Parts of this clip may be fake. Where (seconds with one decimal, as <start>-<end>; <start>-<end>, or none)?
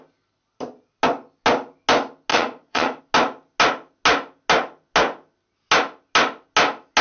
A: 2.3-3.0